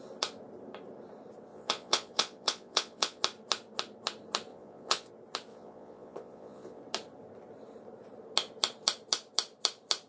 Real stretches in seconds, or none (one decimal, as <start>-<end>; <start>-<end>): 0.0-1.5; 3.2-4.5; 5.1-5.5; 6.8-10.1